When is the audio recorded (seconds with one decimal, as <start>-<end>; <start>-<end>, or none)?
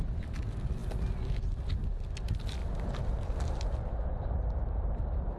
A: 0.0-2.6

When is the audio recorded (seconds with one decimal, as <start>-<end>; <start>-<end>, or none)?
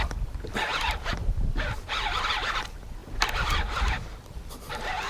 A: 0.0-5.1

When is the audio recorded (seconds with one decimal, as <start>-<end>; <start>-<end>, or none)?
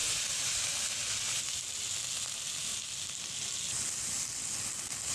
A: 0.7-5.1